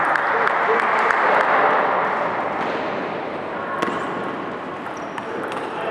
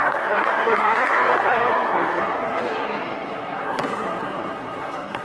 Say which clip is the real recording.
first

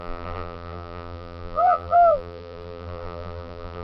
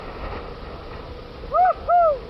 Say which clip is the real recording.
second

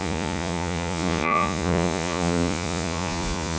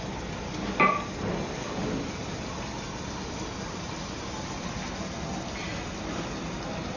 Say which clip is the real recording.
second